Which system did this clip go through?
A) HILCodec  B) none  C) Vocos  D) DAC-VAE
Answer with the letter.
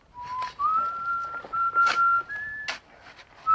B